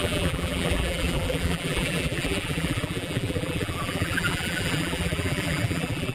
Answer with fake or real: fake